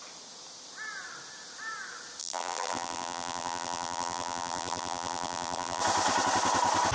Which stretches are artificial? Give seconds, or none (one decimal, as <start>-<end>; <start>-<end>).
2.2-5.8